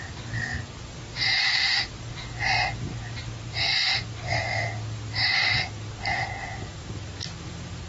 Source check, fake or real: real